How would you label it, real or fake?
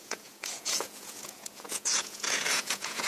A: fake